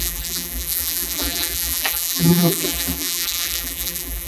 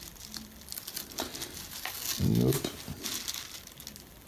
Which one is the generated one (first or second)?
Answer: first